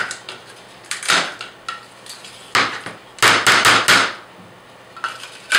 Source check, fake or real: real